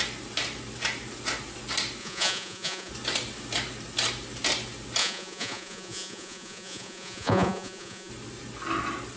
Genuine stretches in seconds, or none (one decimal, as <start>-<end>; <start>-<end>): 0.0-2.0; 2.9-5.0; 8.1-9.2